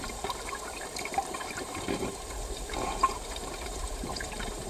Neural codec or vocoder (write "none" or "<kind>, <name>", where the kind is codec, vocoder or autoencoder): vocoder, BigVGAN v2